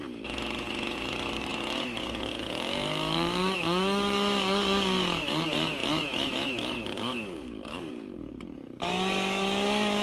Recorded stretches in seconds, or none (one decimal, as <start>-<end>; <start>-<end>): none